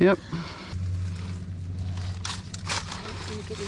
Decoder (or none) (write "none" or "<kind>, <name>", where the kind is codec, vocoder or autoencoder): none